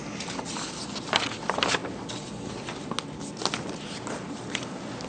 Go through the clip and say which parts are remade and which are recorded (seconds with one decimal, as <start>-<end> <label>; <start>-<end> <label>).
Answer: 0.0-5.1 recorded

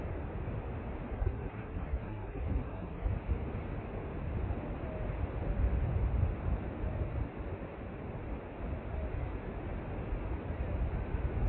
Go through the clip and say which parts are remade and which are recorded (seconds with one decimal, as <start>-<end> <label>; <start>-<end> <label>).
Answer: 0.0-1.1 recorded; 1.1-3.1 remade; 3.1-11.5 recorded

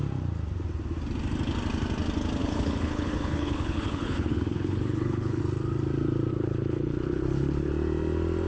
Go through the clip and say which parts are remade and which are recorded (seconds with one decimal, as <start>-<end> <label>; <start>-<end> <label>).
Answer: 0.0-2.4 recorded; 2.4-5.4 remade; 5.4-6.3 recorded; 6.3-7.7 remade; 7.7-8.5 recorded